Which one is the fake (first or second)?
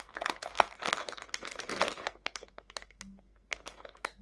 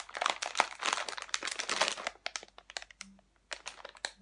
first